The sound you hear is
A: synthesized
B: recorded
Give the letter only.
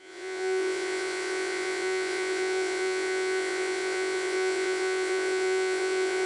A